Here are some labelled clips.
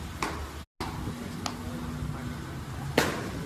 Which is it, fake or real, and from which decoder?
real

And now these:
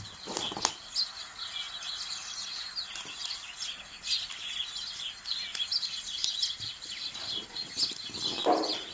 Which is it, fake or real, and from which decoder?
real